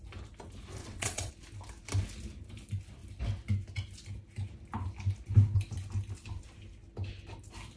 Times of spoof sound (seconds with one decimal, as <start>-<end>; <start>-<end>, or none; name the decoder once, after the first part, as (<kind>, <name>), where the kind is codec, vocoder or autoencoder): 0.8-1.3 (vocoder, WaveNeXt)